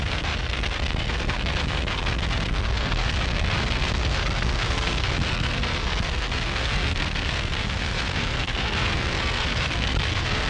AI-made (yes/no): yes